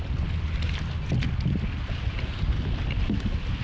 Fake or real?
real